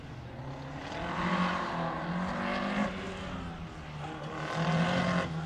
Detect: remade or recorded recorded